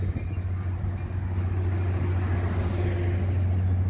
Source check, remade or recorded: recorded